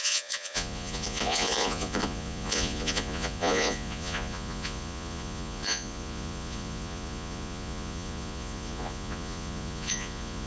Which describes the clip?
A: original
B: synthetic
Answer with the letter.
B